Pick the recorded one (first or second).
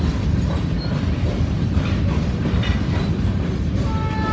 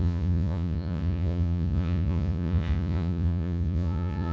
first